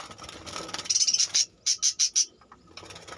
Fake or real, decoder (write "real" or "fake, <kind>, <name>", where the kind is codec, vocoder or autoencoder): real